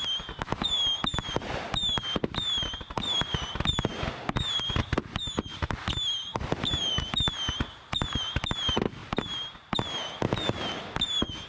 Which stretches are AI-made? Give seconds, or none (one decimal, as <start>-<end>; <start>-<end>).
none